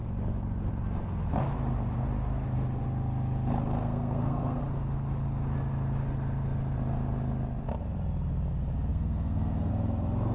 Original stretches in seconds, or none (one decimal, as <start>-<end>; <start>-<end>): 0.0-3.8; 4.6-8.9; 9.7-10.3